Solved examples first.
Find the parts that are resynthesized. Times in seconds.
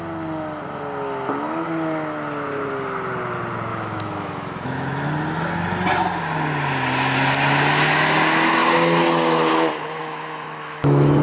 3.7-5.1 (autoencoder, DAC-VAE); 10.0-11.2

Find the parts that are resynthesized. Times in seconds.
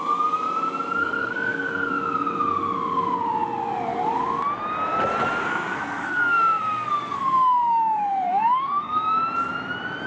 1.0-1.9 (codec, SNAC); 5.4-9.2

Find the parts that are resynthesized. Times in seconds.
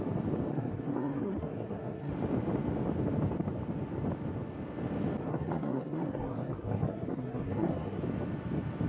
0.5-2.1 (codec, SNAC); 5.3-8.0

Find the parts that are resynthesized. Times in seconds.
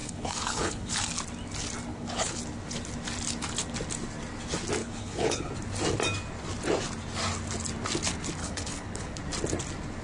0.0-0.9 (codec, HILCodec); 1.9-2.4; 4.8-5.5; 8.4-9.2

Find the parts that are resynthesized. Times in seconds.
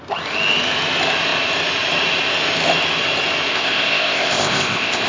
3.5-5.1 (codec, ZipCodec)